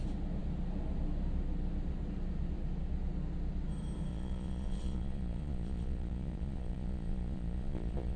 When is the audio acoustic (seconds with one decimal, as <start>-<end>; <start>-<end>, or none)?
0.0-4.1

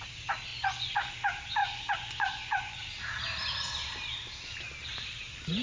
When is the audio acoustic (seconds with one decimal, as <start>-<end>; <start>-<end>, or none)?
0.0-0.5; 1.1-1.6; 2.8-5.6

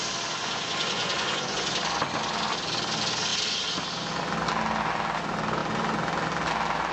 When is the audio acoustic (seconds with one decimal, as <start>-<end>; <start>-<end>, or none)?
0.0-0.4; 1.7-6.9

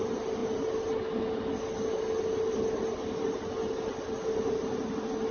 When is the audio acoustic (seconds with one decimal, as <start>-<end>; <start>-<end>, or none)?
0.0-5.3

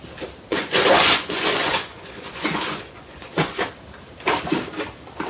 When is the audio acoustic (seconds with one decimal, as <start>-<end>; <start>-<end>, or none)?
0.0-0.5; 3.7-5.3

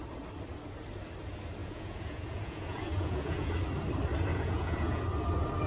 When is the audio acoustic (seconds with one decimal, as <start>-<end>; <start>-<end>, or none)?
0.0-1.6; 3.5-4.3; 5.0-5.7

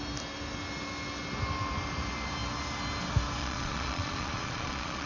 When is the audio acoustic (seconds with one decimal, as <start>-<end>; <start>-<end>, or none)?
0.0-3.4

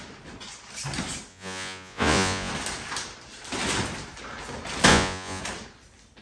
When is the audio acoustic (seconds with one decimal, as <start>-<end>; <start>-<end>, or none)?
0.0-1.3; 2.5-4.9; 5.4-6.2